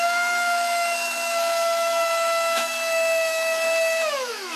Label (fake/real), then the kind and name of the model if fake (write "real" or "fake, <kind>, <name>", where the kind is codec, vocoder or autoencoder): fake, autoencoder, DAC-VAE